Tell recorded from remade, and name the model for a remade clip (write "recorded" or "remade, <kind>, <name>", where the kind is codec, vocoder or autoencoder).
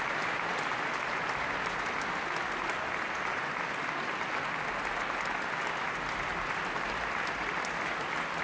recorded